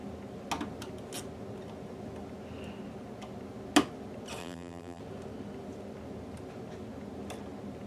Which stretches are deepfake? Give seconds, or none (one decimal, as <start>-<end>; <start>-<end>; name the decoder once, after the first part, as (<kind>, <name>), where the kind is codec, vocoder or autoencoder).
4.4-5.0 (vocoder, BigVGAN v2)

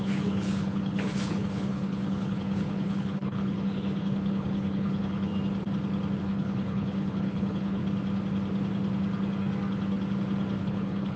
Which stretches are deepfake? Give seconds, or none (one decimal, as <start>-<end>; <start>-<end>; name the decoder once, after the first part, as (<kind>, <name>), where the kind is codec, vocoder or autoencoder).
0.0-5.3 (codec, HILCodec); 6.2-7.8; 10.6-11.2

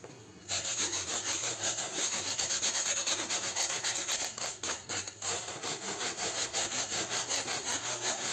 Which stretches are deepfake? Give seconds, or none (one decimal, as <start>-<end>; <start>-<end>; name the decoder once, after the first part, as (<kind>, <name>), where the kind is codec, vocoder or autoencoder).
0.0-8.3 (codec, SNAC)

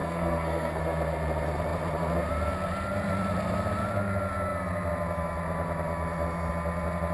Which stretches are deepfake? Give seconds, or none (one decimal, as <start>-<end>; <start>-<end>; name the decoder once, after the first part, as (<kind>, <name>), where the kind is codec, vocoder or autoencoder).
0.0-0.8 (codec, SNAC)

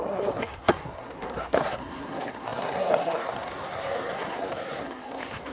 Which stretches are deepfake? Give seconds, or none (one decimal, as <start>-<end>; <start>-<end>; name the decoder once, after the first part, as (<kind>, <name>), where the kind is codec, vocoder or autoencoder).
0.0-5.5 (codec, SNAC)